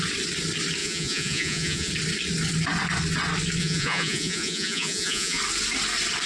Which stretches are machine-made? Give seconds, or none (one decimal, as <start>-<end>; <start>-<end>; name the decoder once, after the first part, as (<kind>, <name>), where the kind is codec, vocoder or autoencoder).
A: 0.8-1.9 (vocoder, Vocos); 3.6-5.4